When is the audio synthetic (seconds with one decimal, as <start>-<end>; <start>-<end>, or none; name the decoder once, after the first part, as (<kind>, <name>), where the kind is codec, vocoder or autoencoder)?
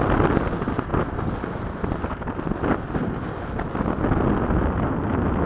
none